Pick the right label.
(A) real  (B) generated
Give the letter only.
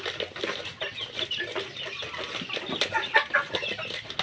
A